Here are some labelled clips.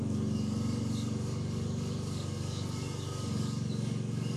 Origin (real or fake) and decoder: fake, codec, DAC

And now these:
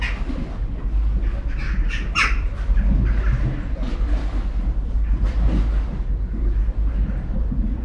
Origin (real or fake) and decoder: real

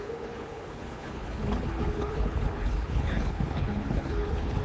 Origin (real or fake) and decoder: fake, codec, HILCodec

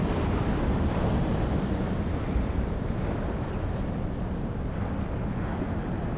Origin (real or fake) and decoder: real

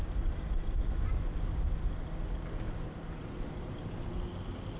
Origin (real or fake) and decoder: real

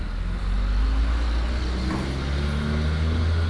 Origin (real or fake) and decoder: real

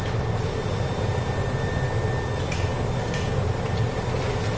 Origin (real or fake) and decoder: real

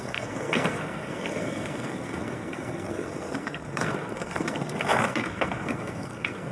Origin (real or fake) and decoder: fake, codec, SNAC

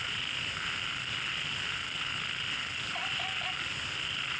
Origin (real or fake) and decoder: real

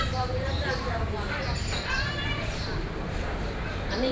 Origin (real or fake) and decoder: fake, vocoder, BigVGAN v2